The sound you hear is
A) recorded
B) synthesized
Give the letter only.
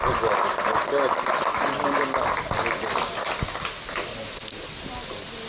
A